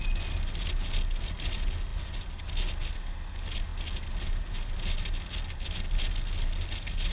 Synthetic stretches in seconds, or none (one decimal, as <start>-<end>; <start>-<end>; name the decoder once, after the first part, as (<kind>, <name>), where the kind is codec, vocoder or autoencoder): none